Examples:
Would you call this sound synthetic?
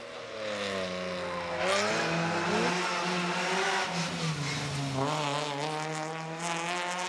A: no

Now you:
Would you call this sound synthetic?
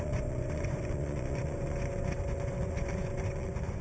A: yes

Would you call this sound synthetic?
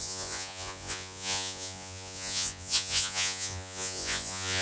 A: yes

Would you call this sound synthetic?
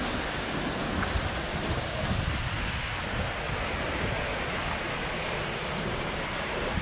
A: no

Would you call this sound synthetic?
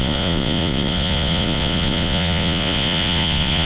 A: yes